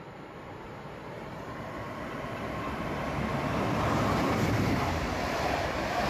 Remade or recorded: remade